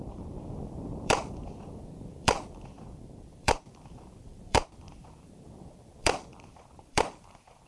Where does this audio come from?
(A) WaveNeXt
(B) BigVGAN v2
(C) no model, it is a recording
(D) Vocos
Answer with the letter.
B